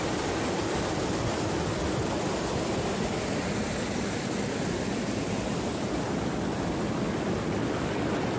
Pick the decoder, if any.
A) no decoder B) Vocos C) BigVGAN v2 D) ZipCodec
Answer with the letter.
A